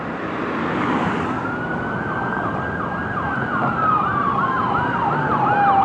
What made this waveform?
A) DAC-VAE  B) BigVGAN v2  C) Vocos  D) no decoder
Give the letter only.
D